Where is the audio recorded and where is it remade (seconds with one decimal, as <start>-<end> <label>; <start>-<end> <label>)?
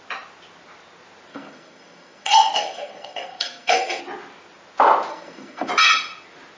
0.0-1.3 recorded; 1.3-4.0 remade; 4.0-5.1 recorded; 5.1-5.7 remade; 5.7-6.6 recorded